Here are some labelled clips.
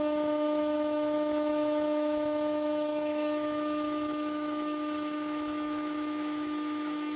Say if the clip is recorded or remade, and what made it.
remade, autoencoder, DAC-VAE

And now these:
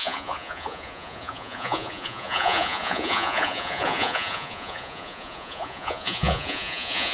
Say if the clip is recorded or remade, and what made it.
remade, vocoder, Vocos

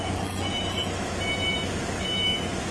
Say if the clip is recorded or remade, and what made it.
remade, autoencoder, DAC-VAE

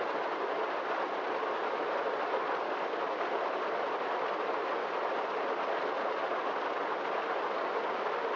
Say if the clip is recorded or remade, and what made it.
recorded